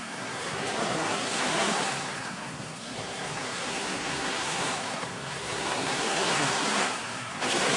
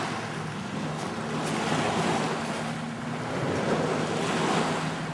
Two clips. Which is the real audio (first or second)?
second